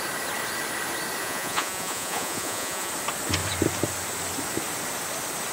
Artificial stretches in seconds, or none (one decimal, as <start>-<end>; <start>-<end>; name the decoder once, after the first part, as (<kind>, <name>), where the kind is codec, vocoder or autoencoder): 1.2-2.9 (vocoder, Vocos)